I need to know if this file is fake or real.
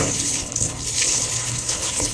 fake